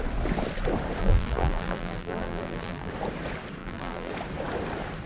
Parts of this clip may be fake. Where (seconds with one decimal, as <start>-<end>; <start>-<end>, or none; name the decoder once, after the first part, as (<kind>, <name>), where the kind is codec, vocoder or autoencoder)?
1.0-2.9 (vocoder, BigVGAN v2); 3.6-4.1